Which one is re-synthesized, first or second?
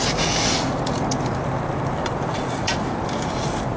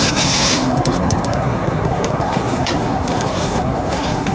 second